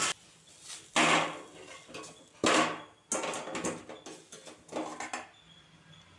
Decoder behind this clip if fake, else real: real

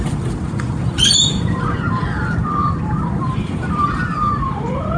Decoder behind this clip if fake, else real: fake, vocoder, BigVGAN v2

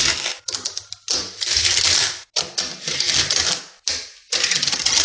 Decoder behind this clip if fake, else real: real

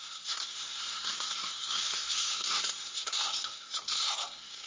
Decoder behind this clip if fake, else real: fake, codec, SNAC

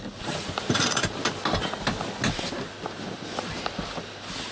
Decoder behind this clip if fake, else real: real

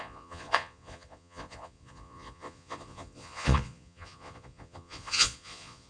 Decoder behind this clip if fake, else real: fake, vocoder, Vocos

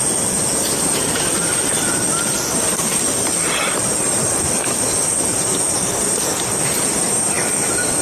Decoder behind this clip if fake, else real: real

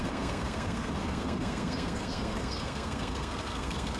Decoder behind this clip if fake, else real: fake, codec, SNAC